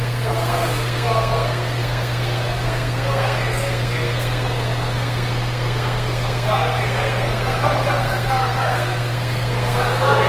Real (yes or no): no